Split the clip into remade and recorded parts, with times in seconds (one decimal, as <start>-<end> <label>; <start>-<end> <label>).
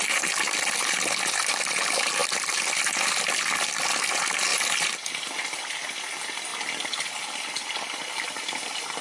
0.0-2.2 recorded; 2.2-2.8 remade; 2.8-4.5 recorded; 4.5-5.3 remade; 5.3-6.5 recorded; 6.5-7.4 remade; 7.4-9.0 recorded